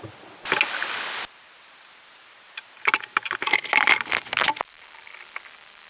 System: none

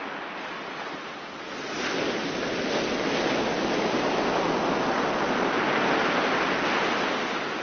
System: none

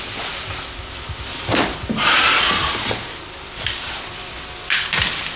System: none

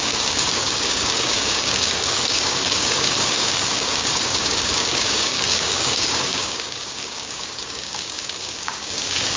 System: codec, DAC